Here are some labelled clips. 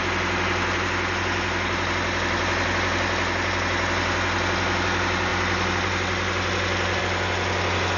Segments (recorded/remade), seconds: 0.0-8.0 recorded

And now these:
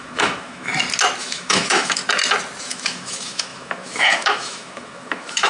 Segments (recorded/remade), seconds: 0.0-0.7 remade; 0.7-1.2 recorded; 1.2-2.0 remade; 2.0-2.6 recorded; 2.6-5.5 remade